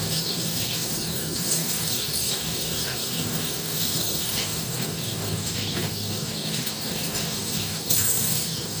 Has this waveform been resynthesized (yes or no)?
yes